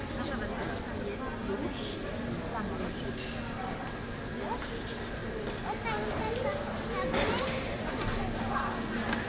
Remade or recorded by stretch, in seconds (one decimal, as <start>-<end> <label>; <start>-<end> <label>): 0.0-9.3 recorded